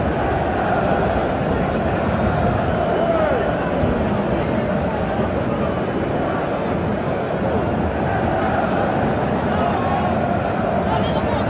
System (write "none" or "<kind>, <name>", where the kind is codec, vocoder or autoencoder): none